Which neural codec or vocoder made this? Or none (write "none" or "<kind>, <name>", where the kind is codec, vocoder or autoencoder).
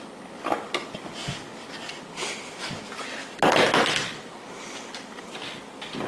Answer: none